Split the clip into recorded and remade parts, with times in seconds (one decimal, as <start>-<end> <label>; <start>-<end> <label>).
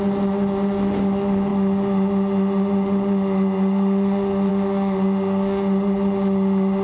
0.0-6.8 recorded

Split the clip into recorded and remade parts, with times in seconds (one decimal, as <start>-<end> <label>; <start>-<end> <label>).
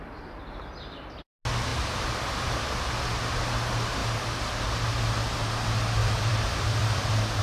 0.0-1.7 recorded; 1.7-2.9 remade; 2.9-6.0 recorded; 6.0-7.4 remade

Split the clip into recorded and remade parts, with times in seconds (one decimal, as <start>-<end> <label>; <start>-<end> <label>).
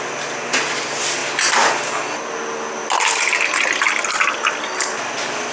0.0-5.5 recorded